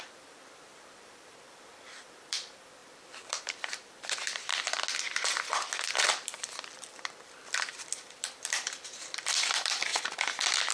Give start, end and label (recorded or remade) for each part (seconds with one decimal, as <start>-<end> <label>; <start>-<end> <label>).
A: 0.0-4.5 remade; 4.5-5.9 recorded; 5.9-9.9 remade; 9.9-10.7 recorded